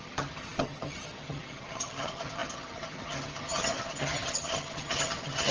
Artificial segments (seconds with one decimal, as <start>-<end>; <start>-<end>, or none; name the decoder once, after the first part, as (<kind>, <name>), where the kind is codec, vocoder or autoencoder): 0.0-5.5 (vocoder, HiFi-GAN)